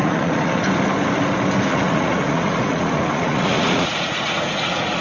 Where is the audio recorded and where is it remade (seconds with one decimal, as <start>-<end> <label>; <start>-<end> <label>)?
0.0-0.6 remade; 0.6-1.7 recorded; 1.7-5.0 remade

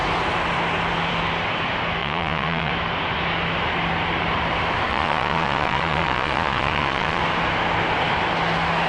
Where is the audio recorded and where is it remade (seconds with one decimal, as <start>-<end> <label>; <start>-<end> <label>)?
0.0-2.0 recorded; 2.0-2.7 remade; 2.7-4.9 recorded; 4.9-7.2 remade; 7.2-8.9 recorded

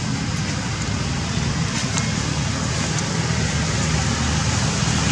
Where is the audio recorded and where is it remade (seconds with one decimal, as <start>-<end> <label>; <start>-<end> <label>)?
0.0-5.1 recorded

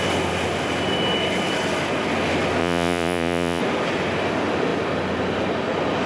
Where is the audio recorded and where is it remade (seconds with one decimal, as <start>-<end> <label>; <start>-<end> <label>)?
0.0-2.6 recorded; 2.6-3.6 remade; 3.6-6.1 recorded

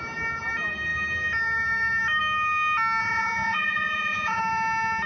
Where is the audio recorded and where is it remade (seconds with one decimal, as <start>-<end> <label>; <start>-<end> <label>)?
0.0-3.0 recorded; 3.0-4.4 remade; 4.4-5.1 recorded

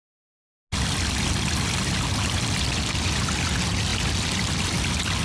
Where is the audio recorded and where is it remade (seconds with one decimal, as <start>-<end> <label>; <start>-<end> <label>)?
0.0-5.2 recorded